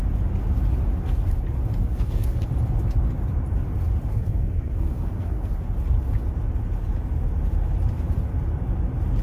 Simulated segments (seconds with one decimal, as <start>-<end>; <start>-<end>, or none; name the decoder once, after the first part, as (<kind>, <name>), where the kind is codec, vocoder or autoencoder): 1.8-2.5 (codec, SNAC); 4.1-5.5

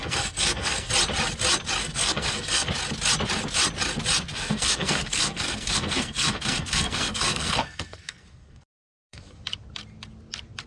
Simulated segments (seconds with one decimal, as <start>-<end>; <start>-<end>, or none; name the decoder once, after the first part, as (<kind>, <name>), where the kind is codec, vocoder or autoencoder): 0.0-0.9 (codec, SNAC); 1.8-2.7; 4.3-9.4

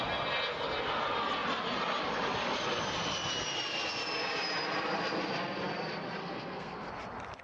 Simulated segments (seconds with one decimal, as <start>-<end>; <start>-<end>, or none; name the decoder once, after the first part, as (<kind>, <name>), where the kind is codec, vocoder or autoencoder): 6.2-6.9 (codec, SNAC)

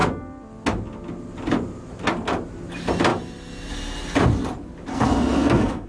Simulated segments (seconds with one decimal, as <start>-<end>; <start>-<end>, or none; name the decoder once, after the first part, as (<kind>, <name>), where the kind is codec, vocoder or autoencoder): 4.9-5.9 (codec, SNAC)

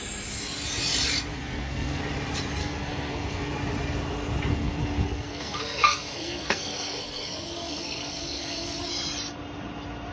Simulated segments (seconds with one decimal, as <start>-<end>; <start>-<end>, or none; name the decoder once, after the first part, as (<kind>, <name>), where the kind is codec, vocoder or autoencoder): 1.3-2.0 (codec, SNAC); 2.6-3.5; 4.5-8.9

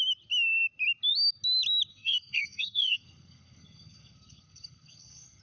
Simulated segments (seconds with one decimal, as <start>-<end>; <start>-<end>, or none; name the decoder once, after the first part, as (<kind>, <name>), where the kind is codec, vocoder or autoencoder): 1.9-5.4 (codec, SNAC)

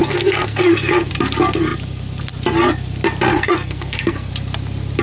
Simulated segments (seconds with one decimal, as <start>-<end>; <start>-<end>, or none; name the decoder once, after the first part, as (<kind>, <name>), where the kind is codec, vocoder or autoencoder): 0.0-1.1 (codec, SNAC); 3.3-4.3